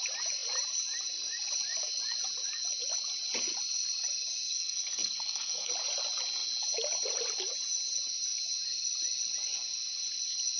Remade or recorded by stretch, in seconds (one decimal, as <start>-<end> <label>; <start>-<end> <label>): 0.0-4.5 recorded; 4.5-5.7 remade; 5.7-10.6 recorded